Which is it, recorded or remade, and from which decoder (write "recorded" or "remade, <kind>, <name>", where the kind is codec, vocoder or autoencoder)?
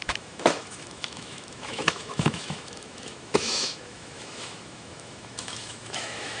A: remade, autoencoder, DAC-VAE